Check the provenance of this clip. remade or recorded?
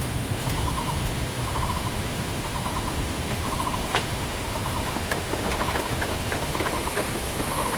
remade